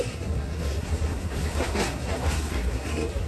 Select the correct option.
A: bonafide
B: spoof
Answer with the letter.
B